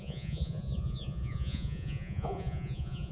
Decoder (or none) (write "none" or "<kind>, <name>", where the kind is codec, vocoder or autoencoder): vocoder, Vocos